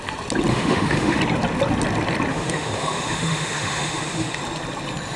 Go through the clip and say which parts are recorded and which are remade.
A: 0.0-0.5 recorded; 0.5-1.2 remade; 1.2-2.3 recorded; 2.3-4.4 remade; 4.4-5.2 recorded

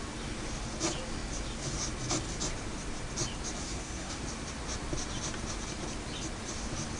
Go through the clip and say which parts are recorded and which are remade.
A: 0.0-3.6 recorded; 3.6-4.2 remade; 4.2-7.0 recorded

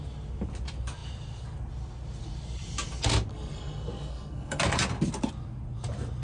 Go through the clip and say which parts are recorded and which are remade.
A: 0.0-3.3 recorded; 3.3-4.6 remade; 4.6-6.2 recorded

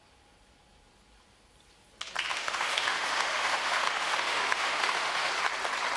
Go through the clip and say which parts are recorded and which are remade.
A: 0.0-2.3 recorded; 2.3-5.3 remade; 5.3-6.0 recorded